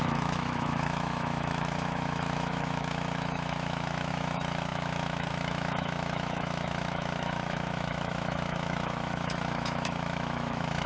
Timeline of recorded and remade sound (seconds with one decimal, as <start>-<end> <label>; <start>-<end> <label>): 0.0-10.9 remade